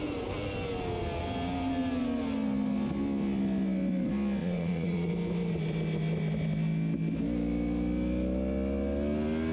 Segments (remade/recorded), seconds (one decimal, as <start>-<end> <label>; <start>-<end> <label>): 0.0-4.4 recorded; 4.4-5.1 remade; 5.1-9.5 recorded